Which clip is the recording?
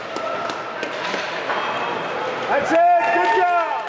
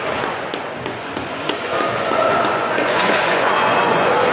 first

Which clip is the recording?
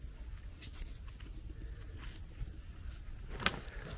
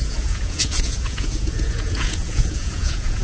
first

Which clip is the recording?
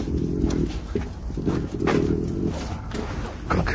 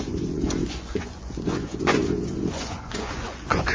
first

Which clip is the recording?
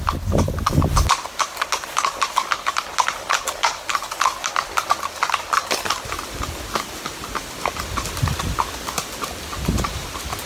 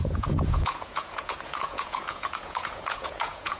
first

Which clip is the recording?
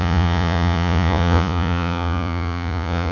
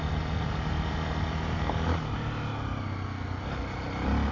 second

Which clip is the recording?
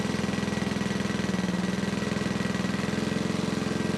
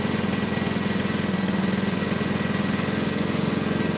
first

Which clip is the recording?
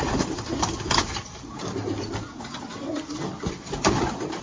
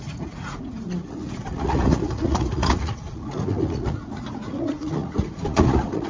first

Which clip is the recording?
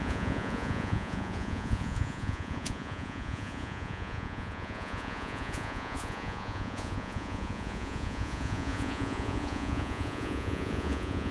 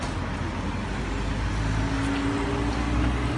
second